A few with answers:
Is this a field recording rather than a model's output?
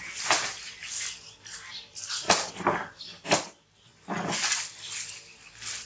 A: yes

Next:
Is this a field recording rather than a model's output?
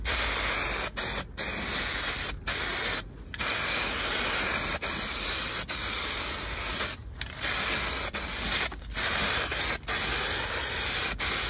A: yes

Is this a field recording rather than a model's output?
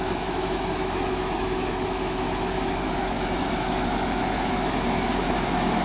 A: no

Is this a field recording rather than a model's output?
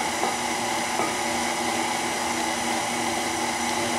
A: yes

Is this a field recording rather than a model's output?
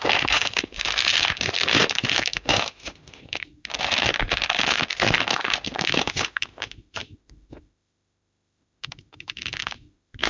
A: no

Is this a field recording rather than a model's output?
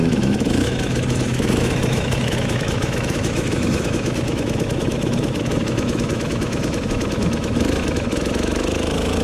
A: no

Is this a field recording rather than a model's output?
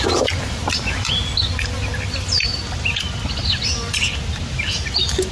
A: yes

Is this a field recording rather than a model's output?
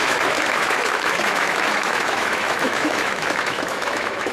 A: no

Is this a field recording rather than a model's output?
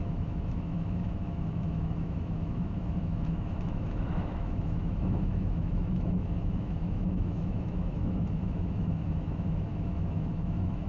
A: no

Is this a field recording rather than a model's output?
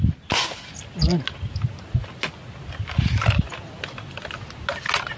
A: yes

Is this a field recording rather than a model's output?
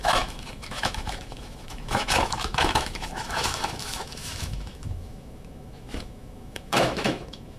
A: no